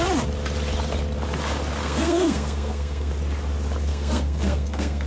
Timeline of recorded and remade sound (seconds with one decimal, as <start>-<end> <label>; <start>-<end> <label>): 0.0-1.8 recorded; 1.8-3.1 remade; 3.1-3.9 recorded; 3.9-5.1 remade